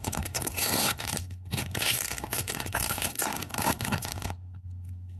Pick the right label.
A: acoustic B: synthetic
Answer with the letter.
B